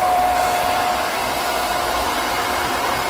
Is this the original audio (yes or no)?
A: no